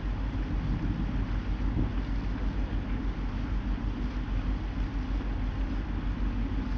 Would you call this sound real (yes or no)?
yes